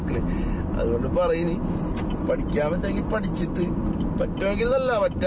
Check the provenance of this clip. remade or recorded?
recorded